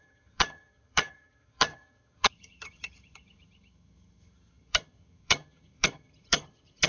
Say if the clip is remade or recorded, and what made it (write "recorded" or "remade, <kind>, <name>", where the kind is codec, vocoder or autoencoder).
remade, vocoder, HiFi-GAN